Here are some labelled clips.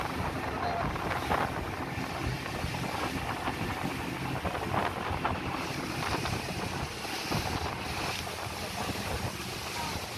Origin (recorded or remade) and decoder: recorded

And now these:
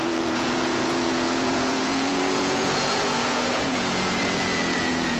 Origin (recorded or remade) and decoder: remade, vocoder, Vocos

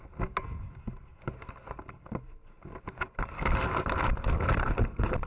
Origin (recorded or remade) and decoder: recorded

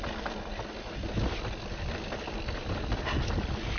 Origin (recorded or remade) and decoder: recorded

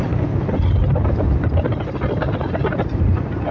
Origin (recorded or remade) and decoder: recorded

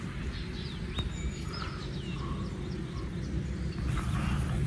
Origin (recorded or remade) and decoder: recorded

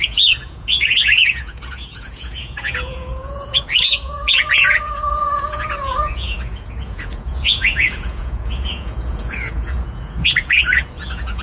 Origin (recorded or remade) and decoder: remade, vocoder, Vocos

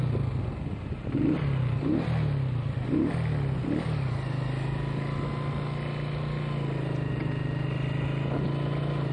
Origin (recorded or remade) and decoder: recorded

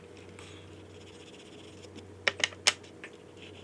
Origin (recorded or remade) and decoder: recorded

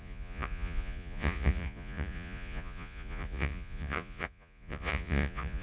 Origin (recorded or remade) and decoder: remade, vocoder, Vocos